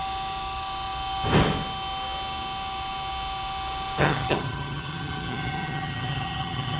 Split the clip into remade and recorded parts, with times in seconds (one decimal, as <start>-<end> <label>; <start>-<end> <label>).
0.0-4.0 recorded; 4.0-6.8 remade